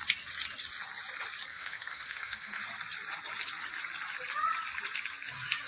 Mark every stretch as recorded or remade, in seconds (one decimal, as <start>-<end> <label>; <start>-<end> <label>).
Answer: 0.0-1.5 recorded; 1.5-2.6 remade; 2.6-5.7 recorded